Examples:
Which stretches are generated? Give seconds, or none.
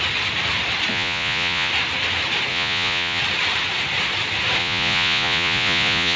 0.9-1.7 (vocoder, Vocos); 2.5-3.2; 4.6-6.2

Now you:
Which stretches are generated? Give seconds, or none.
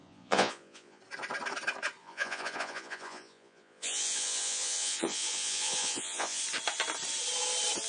0.0-1.0 (vocoder, Vocos); 2.0-6.4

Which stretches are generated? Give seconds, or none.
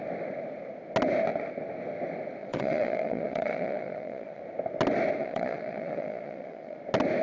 2.4-4.4 (vocoder, Vocos); 5.2-6.8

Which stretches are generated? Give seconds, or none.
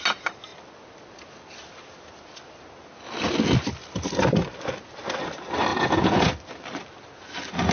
5.7-6.3 (vocoder, Vocos)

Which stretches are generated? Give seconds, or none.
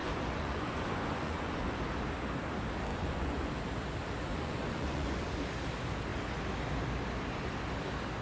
0.0-1.7 (vocoder, Vocos); 2.9-3.5; 4.3-5.3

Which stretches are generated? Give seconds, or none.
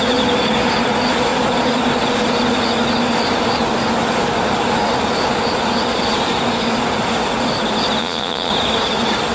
8.0-8.5 (vocoder, Vocos)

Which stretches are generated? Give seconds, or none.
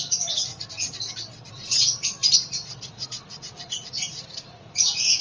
0.0-0.5 (vocoder, Vocos); 1.5-2.2; 2.9-5.2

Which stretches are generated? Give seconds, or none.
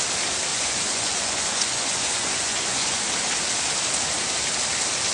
0.5-3.0 (vocoder, Vocos)